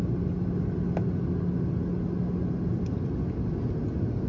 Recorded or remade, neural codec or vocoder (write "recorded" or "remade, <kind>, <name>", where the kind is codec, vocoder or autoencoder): recorded